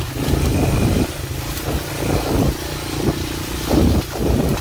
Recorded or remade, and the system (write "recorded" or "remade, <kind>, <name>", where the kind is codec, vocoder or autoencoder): recorded